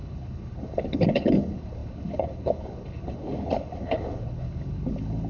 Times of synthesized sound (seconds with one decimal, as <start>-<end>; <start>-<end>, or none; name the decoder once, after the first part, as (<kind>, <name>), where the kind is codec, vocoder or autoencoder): 0.0-5.3 (codec, HILCodec)